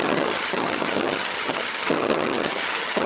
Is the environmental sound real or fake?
fake